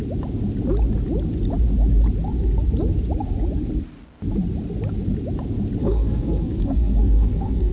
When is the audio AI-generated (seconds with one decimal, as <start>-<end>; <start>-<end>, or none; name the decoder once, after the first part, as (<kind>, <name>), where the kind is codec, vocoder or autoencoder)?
5.8-7.7 (codec, SNAC)